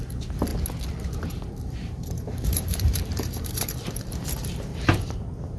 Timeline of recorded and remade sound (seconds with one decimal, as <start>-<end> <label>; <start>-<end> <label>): 0.0-0.5 remade; 0.5-1.2 recorded; 1.2-5.6 remade